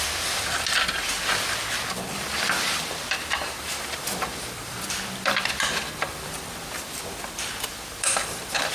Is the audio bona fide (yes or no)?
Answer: no